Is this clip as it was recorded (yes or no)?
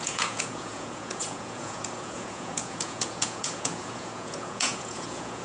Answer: no